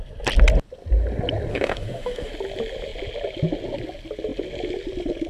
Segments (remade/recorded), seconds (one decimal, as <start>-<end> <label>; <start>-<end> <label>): 0.0-1.5 recorded; 1.5-2.3 remade; 2.3-5.3 recorded

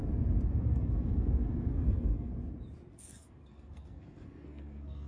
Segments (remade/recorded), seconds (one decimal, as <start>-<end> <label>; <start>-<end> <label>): 0.0-0.6 recorded; 0.6-2.3 remade; 2.3-2.9 recorded; 2.9-5.1 remade

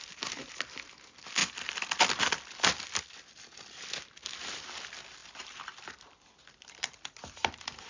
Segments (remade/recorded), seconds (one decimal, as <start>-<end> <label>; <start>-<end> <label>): 0.0-1.4 recorded; 1.4-2.3 remade; 2.3-5.2 recorded; 5.2-7.9 remade

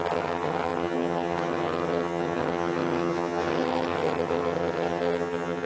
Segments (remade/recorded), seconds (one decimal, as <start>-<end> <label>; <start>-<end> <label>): 0.0-5.7 remade

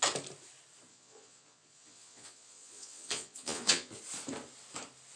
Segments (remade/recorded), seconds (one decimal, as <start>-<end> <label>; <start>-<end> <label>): 0.0-0.9 recorded; 0.9-4.0 remade; 4.0-5.2 recorded

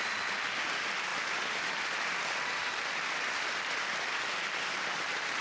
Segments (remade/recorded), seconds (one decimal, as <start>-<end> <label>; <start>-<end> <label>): 0.0-5.4 recorded